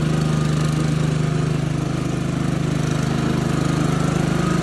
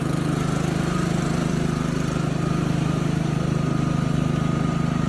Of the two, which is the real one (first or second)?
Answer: first